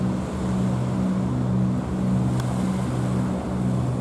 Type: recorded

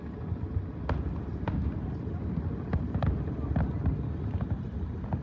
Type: recorded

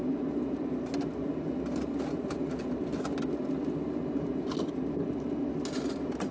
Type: recorded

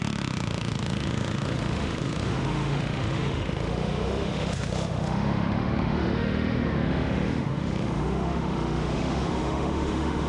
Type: remade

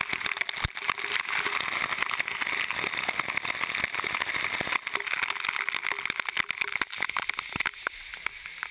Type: recorded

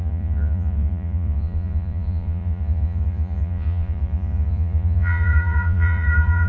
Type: remade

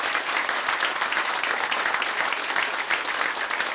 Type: recorded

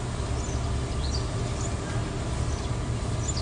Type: recorded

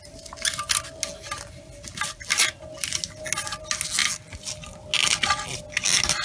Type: recorded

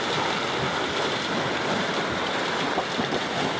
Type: recorded